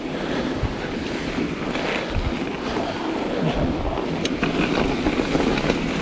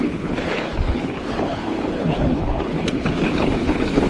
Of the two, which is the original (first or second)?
first